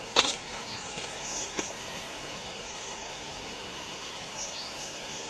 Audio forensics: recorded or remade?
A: remade